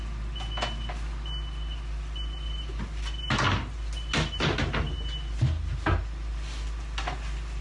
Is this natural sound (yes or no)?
yes